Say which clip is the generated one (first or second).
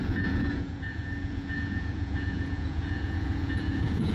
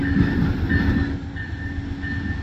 first